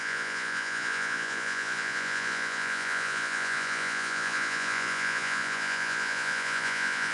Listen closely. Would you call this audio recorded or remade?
remade